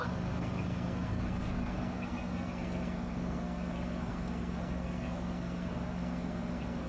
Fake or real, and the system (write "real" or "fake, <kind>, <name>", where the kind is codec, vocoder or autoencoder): fake, codec, SNAC